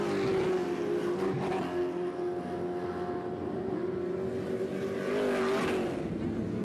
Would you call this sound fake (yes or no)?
no